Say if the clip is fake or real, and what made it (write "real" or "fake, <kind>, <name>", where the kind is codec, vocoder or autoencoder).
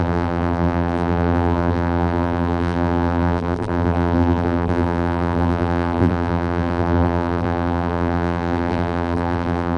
fake, vocoder, BigVGAN v2